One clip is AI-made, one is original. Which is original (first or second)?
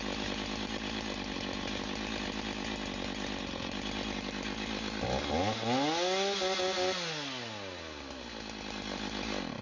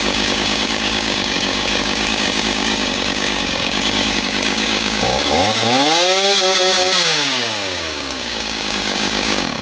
first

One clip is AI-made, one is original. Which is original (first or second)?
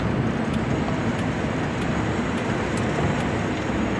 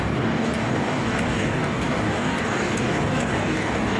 first